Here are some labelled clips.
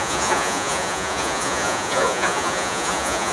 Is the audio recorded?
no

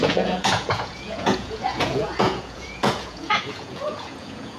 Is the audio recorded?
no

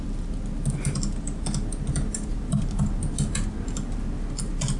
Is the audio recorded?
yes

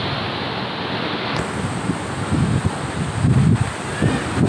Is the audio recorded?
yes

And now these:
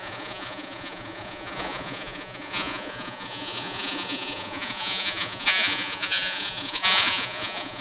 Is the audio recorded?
no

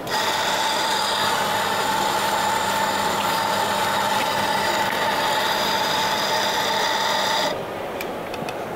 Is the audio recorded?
yes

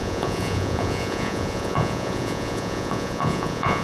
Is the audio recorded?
no